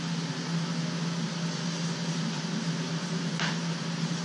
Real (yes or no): yes